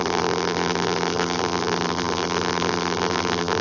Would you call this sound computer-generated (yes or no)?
yes